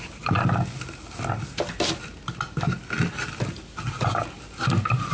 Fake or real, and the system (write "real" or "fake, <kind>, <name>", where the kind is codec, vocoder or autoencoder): real